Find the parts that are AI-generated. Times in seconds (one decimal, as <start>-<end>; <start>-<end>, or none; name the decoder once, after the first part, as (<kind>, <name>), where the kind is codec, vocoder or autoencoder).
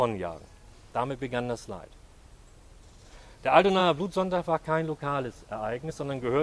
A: none